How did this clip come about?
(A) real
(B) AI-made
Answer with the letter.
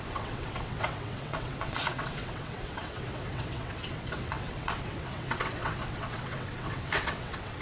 B